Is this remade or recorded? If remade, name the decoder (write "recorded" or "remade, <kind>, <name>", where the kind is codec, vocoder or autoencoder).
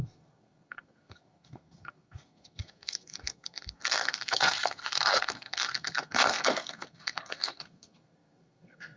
remade, codec, SNAC